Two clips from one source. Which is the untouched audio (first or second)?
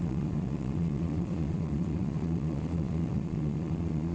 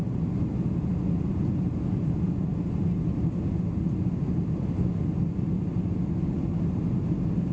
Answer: second